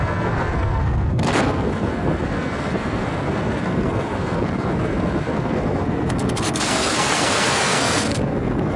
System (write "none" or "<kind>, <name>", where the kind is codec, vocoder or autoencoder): codec, SNAC